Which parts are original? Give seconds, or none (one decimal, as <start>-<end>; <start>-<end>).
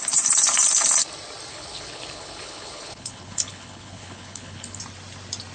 0.0-1.5; 4.8-5.5